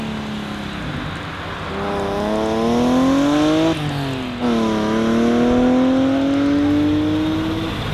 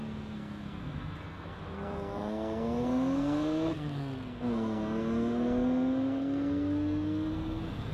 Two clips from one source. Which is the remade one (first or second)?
second